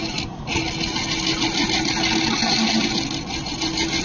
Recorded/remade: recorded